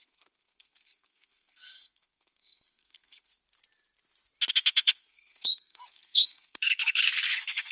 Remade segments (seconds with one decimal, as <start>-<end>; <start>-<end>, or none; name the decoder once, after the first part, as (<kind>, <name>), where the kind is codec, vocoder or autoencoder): 0.0-3.4 (codec, SNAC); 4.5-7.7

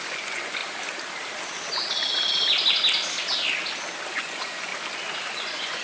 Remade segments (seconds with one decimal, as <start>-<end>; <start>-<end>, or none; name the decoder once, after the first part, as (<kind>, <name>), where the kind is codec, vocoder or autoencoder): 0.0-0.6 (vocoder, Vocos); 4.1-4.7; 5.3-5.8

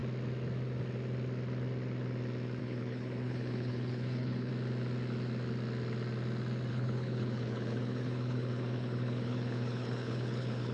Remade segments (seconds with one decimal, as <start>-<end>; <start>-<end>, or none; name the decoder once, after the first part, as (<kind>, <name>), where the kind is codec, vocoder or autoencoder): 2.6-4.5 (codec, HILCodec); 6.7-10.7

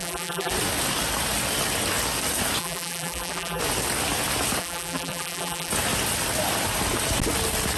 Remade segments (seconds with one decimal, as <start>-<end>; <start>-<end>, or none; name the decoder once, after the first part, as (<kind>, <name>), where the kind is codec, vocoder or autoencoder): 0.0-0.5 (vocoder, BigVGAN v2); 2.6-3.6; 4.6-5.7

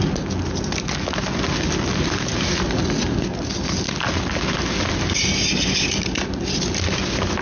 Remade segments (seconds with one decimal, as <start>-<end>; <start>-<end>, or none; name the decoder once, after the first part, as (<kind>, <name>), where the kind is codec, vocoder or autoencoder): none